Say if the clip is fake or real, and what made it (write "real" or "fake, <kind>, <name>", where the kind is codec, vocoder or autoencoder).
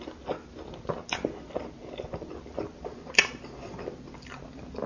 real